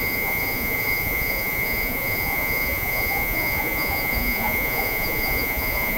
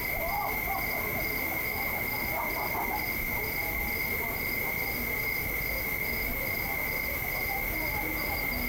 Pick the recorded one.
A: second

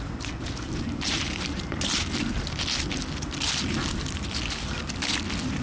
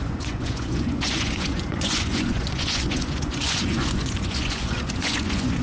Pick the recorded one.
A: first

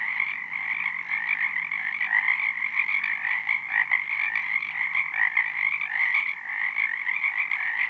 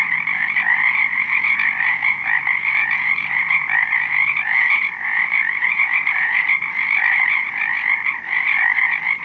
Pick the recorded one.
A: first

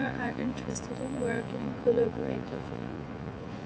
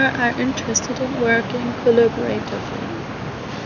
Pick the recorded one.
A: second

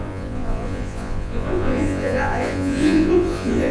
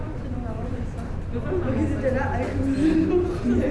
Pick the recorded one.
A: second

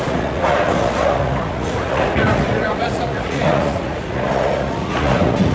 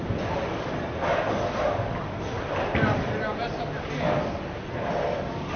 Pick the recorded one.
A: second